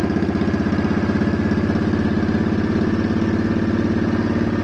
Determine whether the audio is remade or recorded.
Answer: recorded